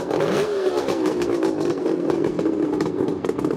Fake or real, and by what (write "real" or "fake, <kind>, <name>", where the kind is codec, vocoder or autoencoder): fake, codec, SNAC